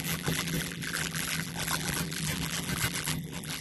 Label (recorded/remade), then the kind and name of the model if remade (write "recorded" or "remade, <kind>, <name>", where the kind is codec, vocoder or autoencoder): remade, vocoder, BigVGAN v2